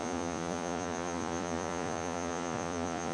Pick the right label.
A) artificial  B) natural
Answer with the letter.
A